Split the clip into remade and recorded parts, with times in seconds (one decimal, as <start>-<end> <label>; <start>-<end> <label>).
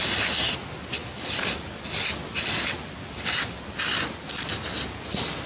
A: 0.0-5.5 recorded